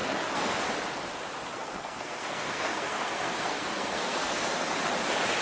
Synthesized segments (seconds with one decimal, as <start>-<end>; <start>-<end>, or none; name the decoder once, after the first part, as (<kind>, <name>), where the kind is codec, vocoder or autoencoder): 0.0-0.6 (codec, SNAC); 1.5-4.7